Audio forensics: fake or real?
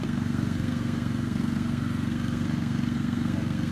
fake